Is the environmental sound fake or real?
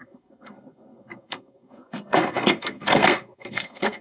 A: fake